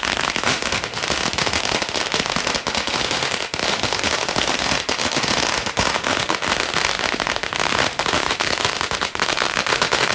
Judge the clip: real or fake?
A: fake